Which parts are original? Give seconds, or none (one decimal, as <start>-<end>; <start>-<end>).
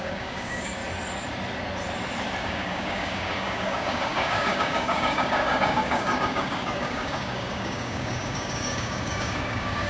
0.8-2.4